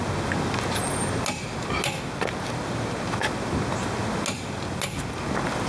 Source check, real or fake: real